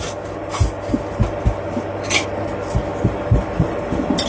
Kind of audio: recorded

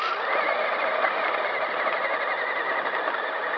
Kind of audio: recorded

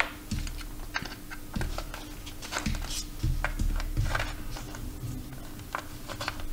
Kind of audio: recorded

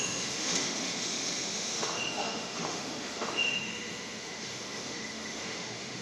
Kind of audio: remade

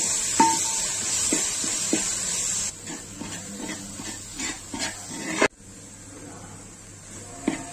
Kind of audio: recorded